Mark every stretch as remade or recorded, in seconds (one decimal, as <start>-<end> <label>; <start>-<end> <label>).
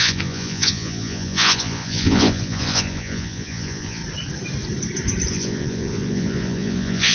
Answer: 0.0-4.0 remade; 4.0-5.3 recorded; 5.3-7.1 remade